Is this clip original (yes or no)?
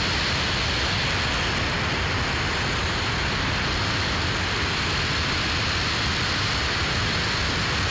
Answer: yes